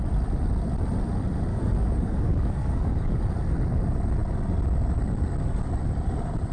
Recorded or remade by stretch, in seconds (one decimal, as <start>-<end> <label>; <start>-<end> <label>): 0.0-1.5 recorded; 1.5-3.2 remade; 3.2-6.5 recorded